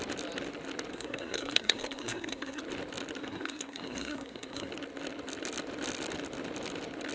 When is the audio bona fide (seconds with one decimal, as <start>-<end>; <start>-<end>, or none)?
0.0-0.9; 2.6-3.2; 4.7-7.1